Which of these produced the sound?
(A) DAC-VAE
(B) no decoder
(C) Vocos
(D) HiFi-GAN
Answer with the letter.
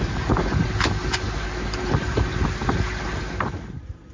B